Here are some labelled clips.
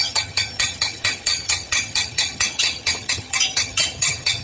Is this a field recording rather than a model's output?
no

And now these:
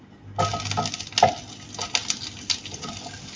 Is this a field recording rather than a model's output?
yes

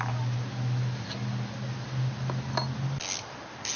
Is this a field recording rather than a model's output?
yes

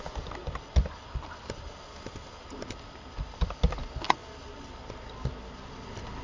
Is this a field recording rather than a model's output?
yes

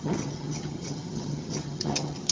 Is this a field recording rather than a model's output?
no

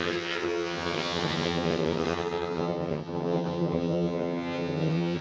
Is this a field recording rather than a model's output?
no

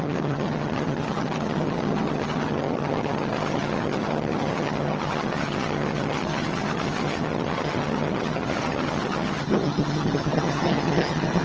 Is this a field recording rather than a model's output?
no